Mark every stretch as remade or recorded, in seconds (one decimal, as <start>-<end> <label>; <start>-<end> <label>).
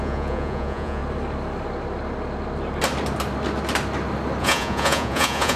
0.0-1.0 remade; 1.0-4.4 recorded; 4.4-5.6 remade